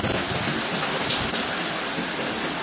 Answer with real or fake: real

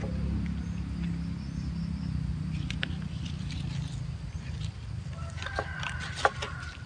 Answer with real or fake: real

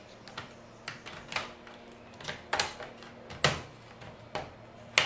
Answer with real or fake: real